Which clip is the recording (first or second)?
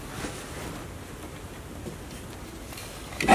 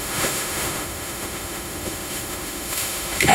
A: first